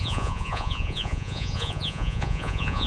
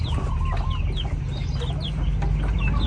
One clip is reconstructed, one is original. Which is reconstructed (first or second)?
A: first